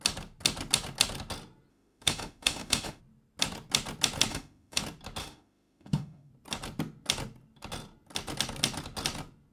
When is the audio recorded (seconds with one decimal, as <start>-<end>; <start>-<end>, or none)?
0.0-1.7; 3.0-4.3; 4.8-5.2; 6.3-9.5